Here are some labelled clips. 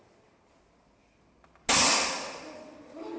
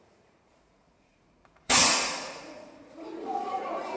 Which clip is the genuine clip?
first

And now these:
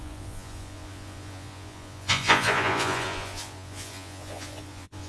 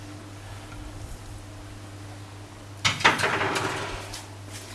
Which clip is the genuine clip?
second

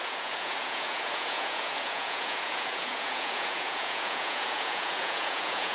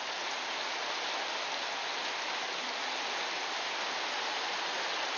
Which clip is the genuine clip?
second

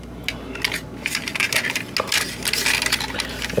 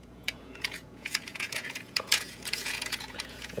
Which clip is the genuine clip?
first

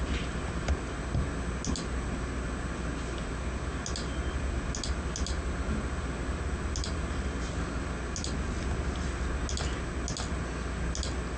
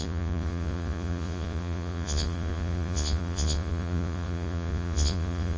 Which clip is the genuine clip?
first